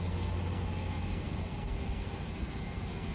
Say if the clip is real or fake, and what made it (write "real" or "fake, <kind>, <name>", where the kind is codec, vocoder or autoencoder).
fake, codec, SNAC